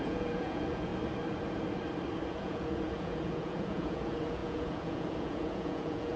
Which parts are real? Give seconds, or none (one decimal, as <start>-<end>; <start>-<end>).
0.9-2.3